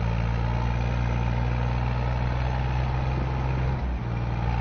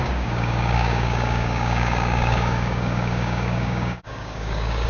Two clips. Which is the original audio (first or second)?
first